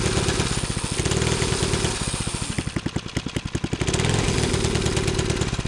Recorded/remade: recorded